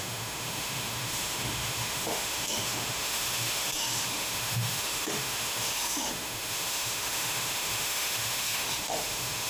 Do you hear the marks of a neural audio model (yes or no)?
yes